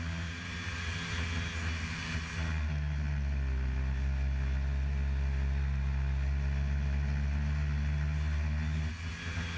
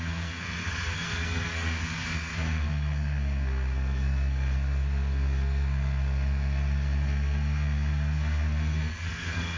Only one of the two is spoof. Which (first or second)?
second